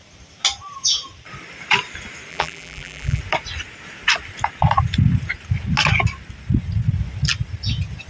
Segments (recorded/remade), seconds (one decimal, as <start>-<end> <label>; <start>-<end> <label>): 0.0-2.3 recorded; 2.3-3.2 remade; 3.2-8.1 recorded